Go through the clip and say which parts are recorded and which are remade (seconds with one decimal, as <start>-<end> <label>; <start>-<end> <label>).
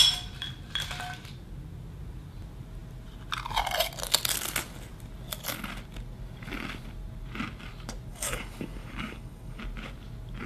0.0-8.1 recorded; 8.1-9.6 remade; 9.6-10.5 recorded